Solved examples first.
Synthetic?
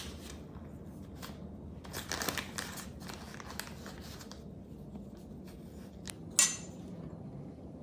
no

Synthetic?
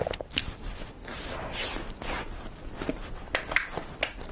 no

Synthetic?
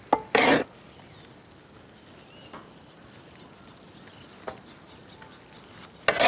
no